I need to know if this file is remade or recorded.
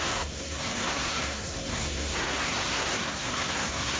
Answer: remade